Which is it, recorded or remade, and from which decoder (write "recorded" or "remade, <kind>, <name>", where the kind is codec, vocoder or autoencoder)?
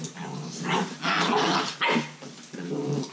recorded